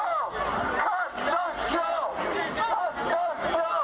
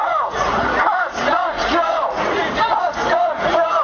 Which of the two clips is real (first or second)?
first